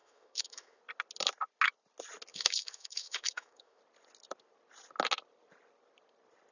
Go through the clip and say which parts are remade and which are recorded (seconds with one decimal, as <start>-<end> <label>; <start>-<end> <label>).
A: 0.0-0.8 remade; 0.8-2.3 recorded; 2.3-3.8 remade; 3.8-6.5 recorded